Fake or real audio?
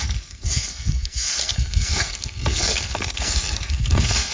fake